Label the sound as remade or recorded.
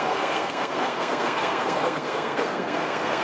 remade